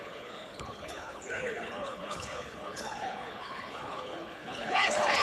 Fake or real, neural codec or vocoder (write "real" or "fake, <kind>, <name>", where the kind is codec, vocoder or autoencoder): fake, codec, HILCodec